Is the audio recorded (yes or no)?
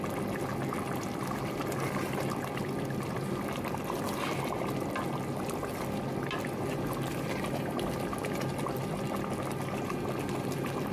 yes